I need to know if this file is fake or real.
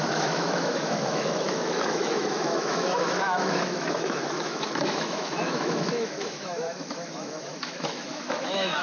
fake